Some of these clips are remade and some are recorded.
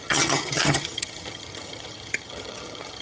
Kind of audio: remade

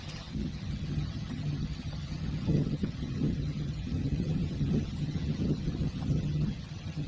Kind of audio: remade